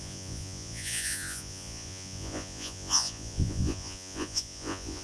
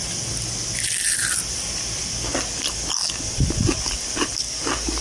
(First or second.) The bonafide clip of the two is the second